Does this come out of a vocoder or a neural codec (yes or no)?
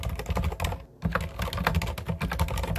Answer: no